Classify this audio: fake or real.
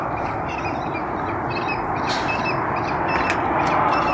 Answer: real